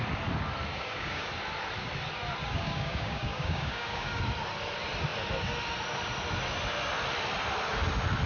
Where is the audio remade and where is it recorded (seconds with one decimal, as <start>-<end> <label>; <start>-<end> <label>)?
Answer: 0.0-0.7 recorded; 0.7-1.3 remade; 1.3-2.4 recorded; 2.4-4.2 remade; 4.2-8.3 recorded